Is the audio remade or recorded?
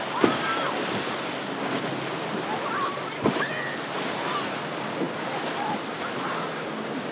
recorded